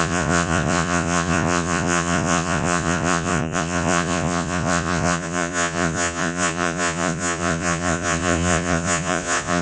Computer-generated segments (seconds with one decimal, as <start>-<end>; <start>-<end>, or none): 0.0-9.6